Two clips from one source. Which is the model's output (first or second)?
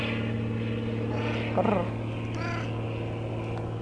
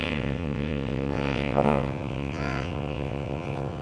second